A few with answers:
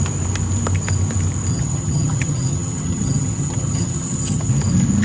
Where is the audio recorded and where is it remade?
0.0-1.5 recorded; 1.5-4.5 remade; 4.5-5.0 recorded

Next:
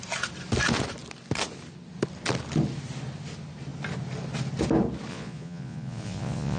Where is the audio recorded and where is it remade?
0.0-5.1 recorded; 5.1-6.6 remade

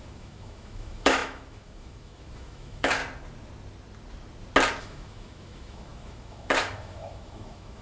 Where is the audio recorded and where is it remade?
0.0-3.0 remade; 3.0-4.8 recorded; 4.8-7.8 remade

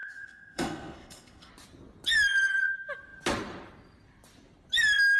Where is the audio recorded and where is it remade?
0.0-1.5 remade; 1.5-5.2 recorded

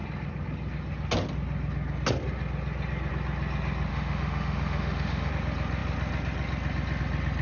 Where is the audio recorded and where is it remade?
0.0-3.9 recorded; 3.9-5.3 remade; 5.3-7.4 recorded

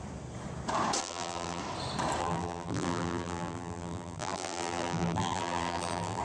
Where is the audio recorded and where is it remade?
0.0-1.0 recorded; 1.0-1.6 remade; 1.6-2.2 recorded; 2.2-6.2 remade

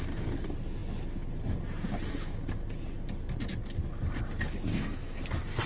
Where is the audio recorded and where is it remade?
0.0-4.7 recorded; 4.7-5.2 remade; 5.2-5.7 recorded

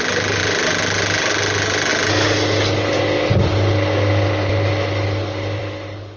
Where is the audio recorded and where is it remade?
0.0-6.2 recorded